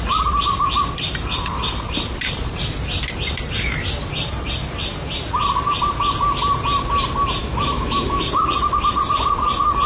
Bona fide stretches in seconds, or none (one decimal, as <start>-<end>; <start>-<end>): 0.0-7.4; 8.2-9.9